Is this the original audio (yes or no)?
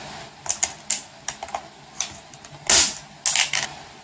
yes